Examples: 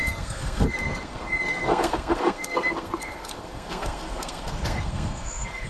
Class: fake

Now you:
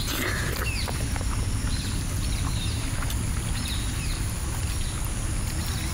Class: real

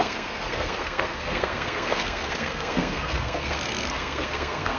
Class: fake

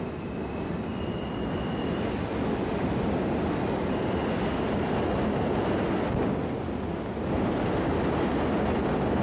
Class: real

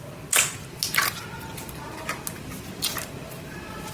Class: real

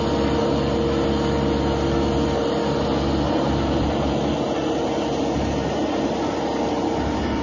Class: real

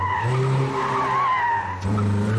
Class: real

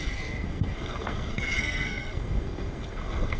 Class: fake